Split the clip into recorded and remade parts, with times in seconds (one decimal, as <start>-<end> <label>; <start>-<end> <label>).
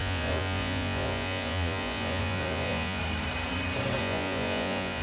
0.0-3.0 remade; 3.0-4.0 recorded; 4.0-5.0 remade